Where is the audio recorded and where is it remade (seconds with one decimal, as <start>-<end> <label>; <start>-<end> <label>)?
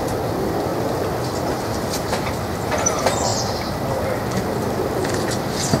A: 0.0-0.7 recorded; 0.7-2.2 remade; 2.2-3.3 recorded; 3.3-4.2 remade; 4.2-5.8 recorded